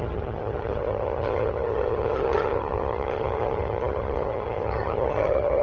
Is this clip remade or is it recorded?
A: remade